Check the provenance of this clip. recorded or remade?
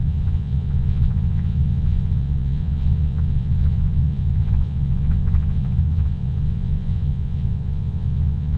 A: remade